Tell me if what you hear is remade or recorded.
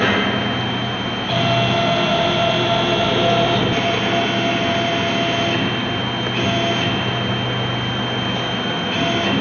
recorded